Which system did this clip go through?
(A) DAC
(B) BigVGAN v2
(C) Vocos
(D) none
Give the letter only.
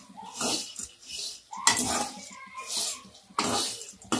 D